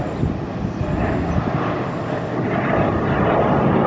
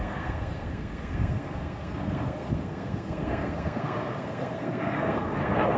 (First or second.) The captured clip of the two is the first